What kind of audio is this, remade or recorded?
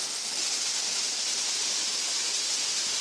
recorded